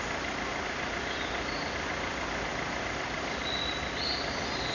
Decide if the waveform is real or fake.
real